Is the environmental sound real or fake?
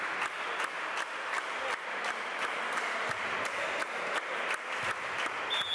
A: real